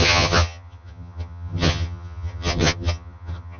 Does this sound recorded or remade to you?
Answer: remade